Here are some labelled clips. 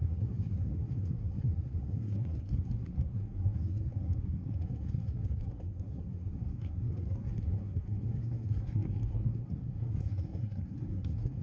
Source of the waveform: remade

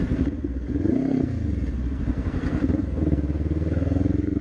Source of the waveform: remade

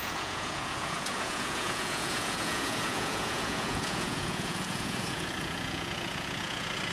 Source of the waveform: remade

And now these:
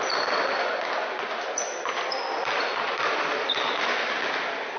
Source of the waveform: recorded